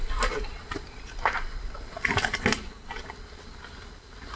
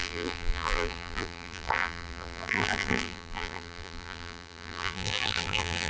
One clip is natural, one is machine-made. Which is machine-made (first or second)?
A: second